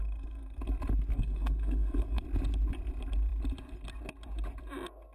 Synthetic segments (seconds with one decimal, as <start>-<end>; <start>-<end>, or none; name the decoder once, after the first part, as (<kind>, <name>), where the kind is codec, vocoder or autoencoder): 0.0-0.6 (codec, SNAC); 1.1-2.2